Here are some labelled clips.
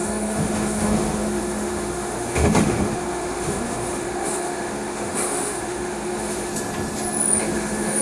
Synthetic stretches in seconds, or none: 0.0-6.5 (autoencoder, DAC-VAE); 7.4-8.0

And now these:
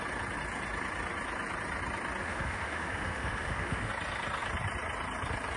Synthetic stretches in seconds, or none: 2.2-3.9 (autoencoder, DAC-VAE)

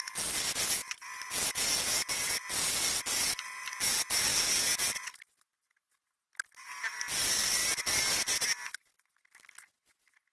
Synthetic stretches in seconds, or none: none

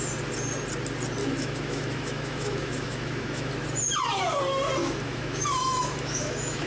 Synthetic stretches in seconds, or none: 1.2-3.5 (autoencoder, DAC-VAE); 4.8-6.7

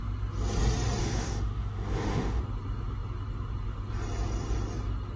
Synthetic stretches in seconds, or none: 1.0-2.4 (autoencoder, DAC-VAE)

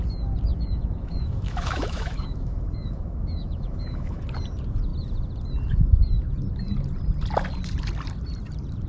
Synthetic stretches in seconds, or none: 0.5-4.2 (autoencoder, DAC-VAE)